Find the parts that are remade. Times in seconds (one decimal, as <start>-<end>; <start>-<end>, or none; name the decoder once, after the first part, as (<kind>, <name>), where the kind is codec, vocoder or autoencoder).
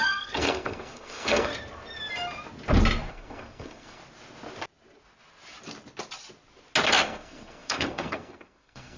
0.0-1.5 (codec, SNAC); 3.1-4.0; 6.9-9.0